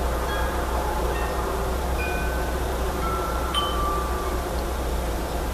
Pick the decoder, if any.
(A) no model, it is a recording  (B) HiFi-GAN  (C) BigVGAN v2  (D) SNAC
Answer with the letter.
C